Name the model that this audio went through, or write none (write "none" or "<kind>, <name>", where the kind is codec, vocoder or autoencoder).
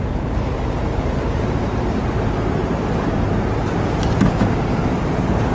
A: vocoder, BigVGAN v2